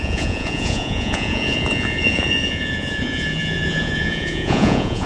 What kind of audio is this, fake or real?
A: fake